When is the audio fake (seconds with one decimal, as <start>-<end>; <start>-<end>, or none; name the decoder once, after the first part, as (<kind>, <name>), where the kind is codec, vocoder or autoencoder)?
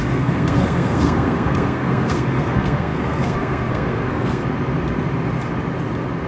0.0-4.4 (codec, SNAC)